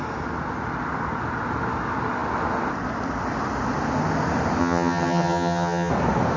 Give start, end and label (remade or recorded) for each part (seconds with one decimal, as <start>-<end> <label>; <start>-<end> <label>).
0.0-4.6 recorded; 4.6-5.9 remade; 5.9-6.4 recorded